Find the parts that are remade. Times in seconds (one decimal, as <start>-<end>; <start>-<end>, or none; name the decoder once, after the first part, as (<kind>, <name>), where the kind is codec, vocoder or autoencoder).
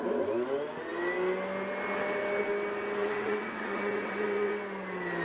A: 3.0-4.5 (vocoder, WaveNeXt)